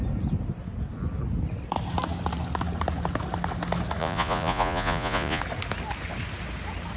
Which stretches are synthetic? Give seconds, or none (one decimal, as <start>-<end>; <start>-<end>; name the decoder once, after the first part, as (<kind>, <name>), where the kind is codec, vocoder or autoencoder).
4.0-5.4 (vocoder, Vocos)